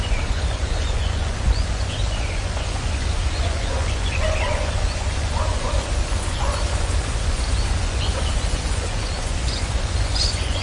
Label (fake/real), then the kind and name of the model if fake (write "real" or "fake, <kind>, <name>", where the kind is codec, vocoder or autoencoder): fake, vocoder, Vocos